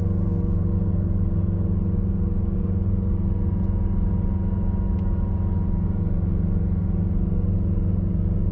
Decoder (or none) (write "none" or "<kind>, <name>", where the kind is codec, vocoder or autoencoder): none